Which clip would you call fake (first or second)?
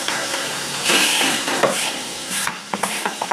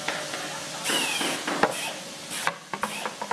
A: first